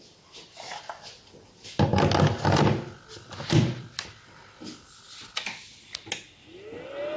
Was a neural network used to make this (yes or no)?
no